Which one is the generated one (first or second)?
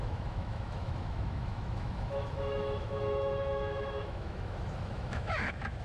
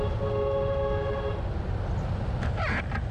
first